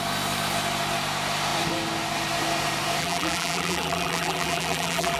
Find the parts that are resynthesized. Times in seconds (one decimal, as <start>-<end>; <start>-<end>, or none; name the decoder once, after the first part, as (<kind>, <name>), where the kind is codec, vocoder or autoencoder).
3.0-5.2 (vocoder, BigVGAN v2)